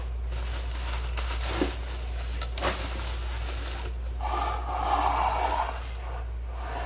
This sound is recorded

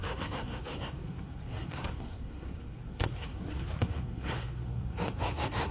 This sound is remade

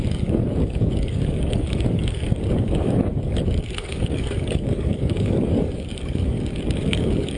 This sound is remade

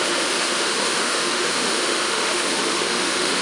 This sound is remade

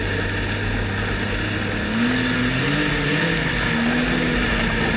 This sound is recorded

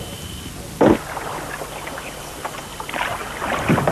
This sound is remade